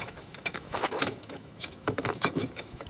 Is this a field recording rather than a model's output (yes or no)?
no